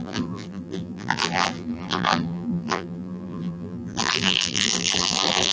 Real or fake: fake